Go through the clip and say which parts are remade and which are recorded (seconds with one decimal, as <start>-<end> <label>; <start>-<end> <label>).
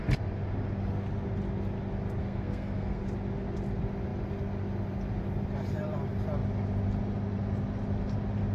0.0-2.2 recorded; 2.2-3.0 remade; 3.0-8.5 recorded